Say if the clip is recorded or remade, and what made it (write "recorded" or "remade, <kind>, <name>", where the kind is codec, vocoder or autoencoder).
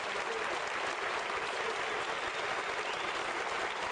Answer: recorded